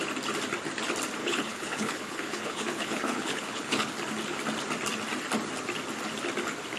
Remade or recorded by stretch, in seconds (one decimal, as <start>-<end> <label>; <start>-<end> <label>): 0.0-1.2 recorded; 1.2-3.9 remade; 3.9-6.8 recorded